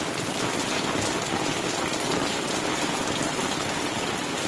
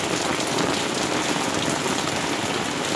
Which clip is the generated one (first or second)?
first